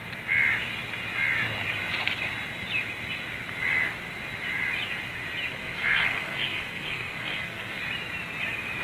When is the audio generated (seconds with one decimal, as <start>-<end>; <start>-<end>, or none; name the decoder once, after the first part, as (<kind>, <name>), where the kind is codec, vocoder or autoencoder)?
5.5-7.8 (codec, SNAC)